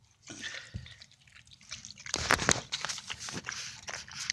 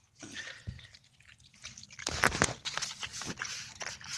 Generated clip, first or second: first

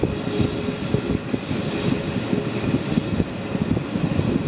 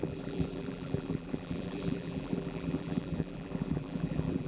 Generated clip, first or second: second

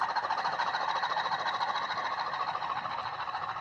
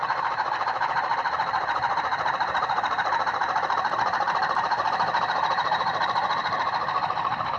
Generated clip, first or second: second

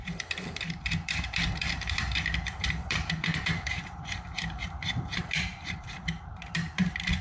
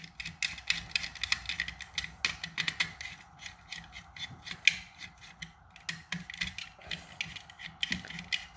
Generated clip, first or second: first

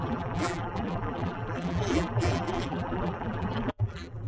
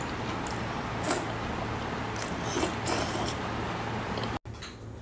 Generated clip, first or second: first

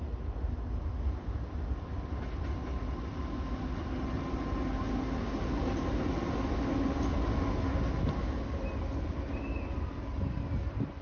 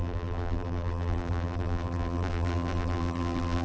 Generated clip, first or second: second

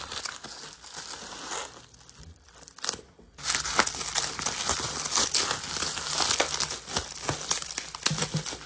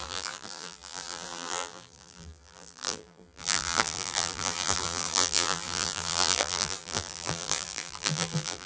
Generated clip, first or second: second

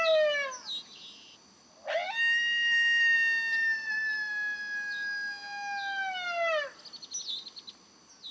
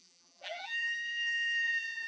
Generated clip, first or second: second